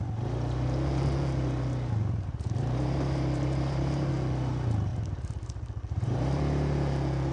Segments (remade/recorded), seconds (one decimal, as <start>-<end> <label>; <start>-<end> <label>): 0.0-2.0 recorded; 2.0-4.1 remade; 4.1-4.9 recorded; 4.9-6.4 remade; 6.4-7.3 recorded